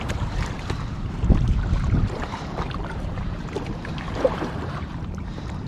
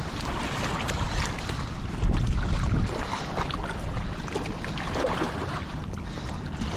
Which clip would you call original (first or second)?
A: second